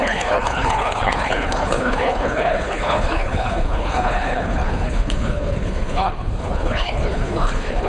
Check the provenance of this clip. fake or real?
fake